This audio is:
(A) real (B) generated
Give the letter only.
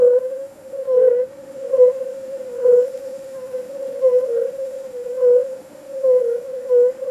B